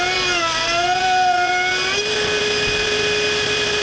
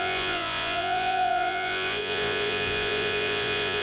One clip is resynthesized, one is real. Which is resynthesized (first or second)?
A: second